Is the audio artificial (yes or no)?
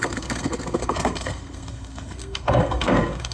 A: yes